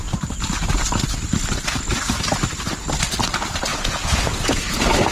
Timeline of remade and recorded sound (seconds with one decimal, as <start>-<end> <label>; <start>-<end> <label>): 0.0-3.7 recorded; 3.7-4.5 remade; 4.5-5.1 recorded